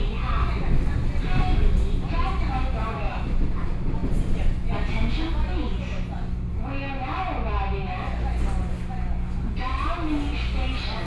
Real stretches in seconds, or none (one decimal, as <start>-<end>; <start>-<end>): 0.0-11.1